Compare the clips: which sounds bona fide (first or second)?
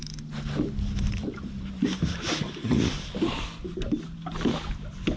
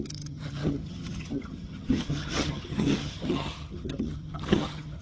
first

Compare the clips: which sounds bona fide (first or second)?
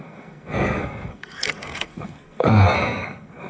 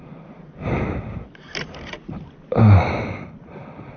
second